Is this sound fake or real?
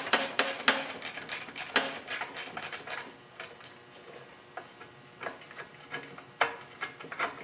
real